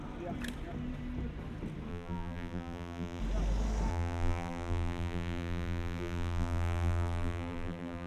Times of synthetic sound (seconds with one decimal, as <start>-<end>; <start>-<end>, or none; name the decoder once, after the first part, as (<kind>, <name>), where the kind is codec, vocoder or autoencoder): 1.9-3.2 (vocoder, BigVGAN v2); 3.9-8.1